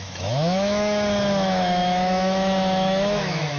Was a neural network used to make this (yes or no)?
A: yes